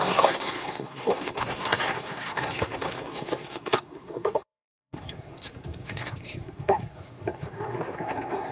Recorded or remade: remade